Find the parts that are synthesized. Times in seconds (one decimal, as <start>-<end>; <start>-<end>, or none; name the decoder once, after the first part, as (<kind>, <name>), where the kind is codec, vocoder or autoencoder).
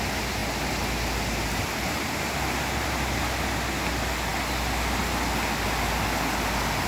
none